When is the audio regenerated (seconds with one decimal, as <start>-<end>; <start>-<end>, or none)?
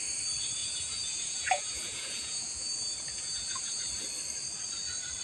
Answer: 0.6-3.7